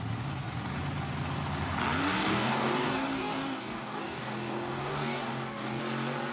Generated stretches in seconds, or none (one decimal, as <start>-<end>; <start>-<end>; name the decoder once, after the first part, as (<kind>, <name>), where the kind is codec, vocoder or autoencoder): 2.0-5.8 (codec, DAC)